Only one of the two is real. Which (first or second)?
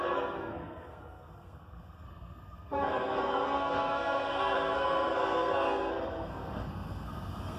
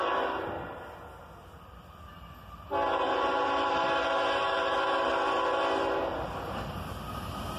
second